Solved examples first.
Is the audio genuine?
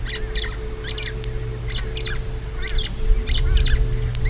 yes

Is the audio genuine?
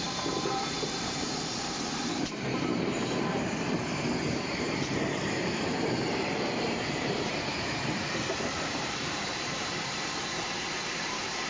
no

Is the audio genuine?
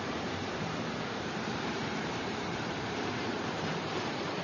no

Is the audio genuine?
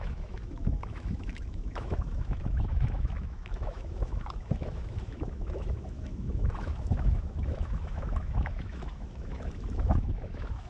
no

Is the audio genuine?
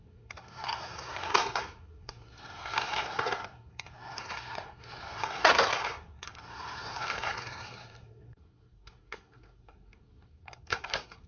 no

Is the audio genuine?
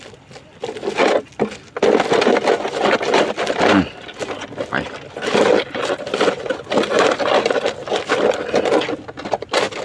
yes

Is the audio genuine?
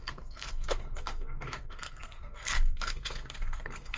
no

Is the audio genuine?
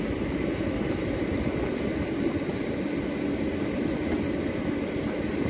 yes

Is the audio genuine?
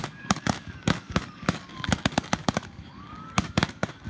no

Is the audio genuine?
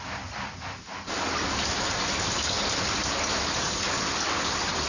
yes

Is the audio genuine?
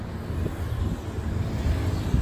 yes